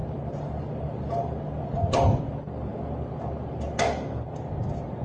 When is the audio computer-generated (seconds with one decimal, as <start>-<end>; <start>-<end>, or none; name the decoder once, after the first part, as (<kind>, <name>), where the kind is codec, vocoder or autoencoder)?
0.0-2.2 (vocoder, BigVGAN v2)